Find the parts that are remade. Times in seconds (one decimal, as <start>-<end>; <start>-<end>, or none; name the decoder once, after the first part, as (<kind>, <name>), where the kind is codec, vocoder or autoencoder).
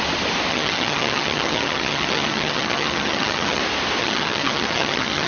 0.5-3.6 (vocoder, HiFi-GAN); 4.0-5.3